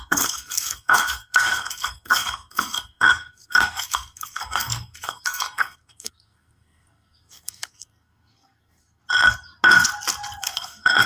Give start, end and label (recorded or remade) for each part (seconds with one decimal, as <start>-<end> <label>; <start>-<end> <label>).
0.0-9.0 remade; 9.0-10.4 recorded; 10.4-11.1 remade